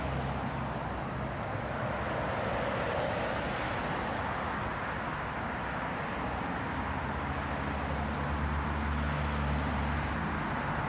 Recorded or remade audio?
recorded